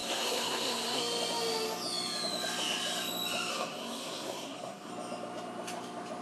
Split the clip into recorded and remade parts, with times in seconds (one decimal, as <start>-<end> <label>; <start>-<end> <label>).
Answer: 0.0-1.0 remade; 1.0-3.5 recorded; 3.5-4.9 remade; 4.9-6.2 recorded